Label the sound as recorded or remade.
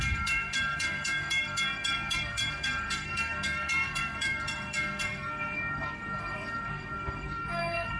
remade